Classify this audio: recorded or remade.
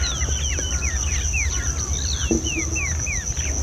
recorded